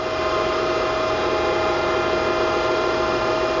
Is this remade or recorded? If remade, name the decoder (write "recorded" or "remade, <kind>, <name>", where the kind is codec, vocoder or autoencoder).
recorded